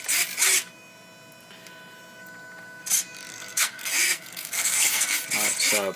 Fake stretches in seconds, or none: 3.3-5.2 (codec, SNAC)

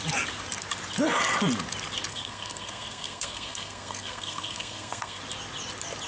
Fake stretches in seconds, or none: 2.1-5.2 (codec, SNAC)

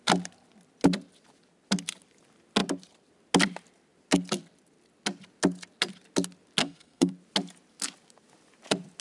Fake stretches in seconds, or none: 6.6-7.1 (codec, SNAC)

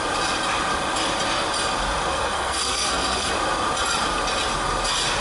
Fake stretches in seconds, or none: 2.1-3.3 (codec, SNAC)

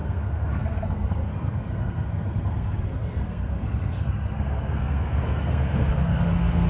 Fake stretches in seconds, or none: 0.0-6.7 (codec, SNAC)

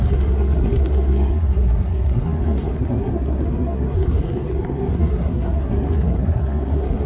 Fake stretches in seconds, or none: 0.0-7.1 (codec, SNAC)